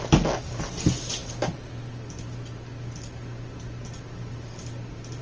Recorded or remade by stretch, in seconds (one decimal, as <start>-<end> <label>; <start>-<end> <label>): 0.0-5.2 recorded